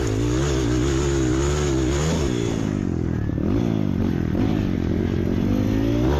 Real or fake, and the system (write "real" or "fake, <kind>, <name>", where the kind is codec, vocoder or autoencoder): real